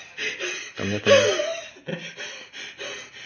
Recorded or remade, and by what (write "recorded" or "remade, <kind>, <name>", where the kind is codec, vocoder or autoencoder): recorded